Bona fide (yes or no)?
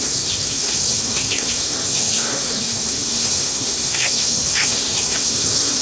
no